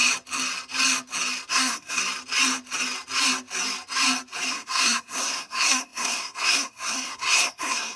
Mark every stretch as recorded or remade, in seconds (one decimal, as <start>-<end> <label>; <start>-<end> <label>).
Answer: 0.0-1.5 recorded; 1.5-2.0 remade; 2.0-4.5 recorded; 4.5-8.0 remade